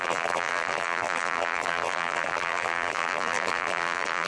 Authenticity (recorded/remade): remade